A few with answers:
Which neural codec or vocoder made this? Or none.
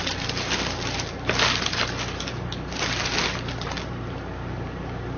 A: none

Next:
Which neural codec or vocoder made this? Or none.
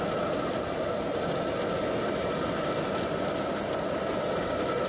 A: none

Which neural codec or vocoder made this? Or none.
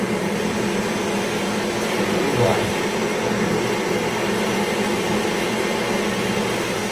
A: none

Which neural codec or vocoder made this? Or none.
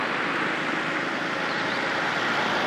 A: none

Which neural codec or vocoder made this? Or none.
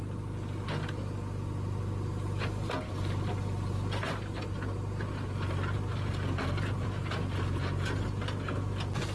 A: none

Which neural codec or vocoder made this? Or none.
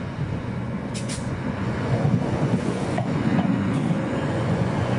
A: vocoder, Vocos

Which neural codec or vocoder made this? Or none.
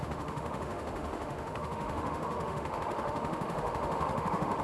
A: autoencoder, DAC-VAE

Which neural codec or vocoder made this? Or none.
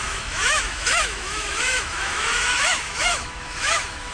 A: autoencoder, DAC-VAE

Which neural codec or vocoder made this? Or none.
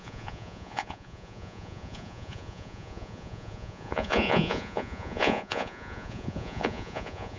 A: vocoder, Vocos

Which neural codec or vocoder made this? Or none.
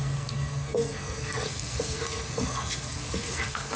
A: codec, SNAC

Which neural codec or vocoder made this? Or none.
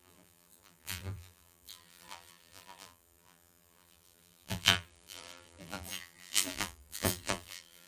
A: vocoder, BigVGAN v2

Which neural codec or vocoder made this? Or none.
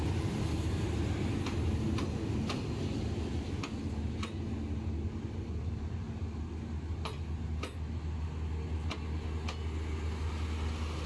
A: none